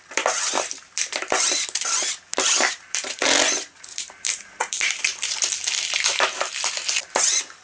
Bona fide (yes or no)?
no